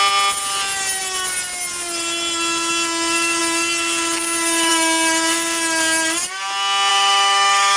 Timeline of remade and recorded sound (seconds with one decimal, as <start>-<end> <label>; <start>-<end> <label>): 0.0-6.9 recorded; 6.9-7.8 remade